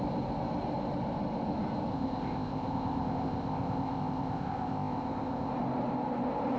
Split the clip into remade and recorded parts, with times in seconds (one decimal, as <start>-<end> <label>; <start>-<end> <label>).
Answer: 0.0-1.9 recorded; 1.9-5.5 remade; 5.5-6.6 recorded